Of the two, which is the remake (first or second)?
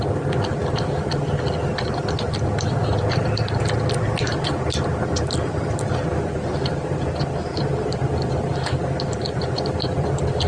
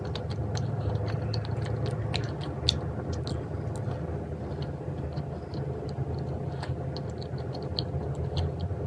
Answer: first